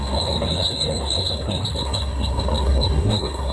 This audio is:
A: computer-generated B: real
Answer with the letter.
A